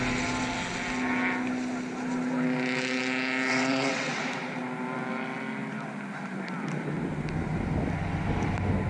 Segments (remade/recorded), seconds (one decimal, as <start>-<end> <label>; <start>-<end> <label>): 0.0-3.5 recorded; 3.5-4.2 remade; 4.2-8.9 recorded